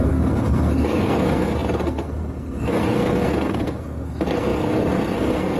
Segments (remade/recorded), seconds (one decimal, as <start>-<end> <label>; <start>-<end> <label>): 0.0-5.6 remade